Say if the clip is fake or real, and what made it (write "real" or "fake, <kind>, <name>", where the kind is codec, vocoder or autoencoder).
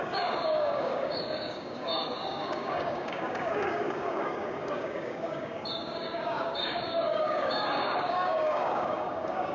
fake, codec, DAC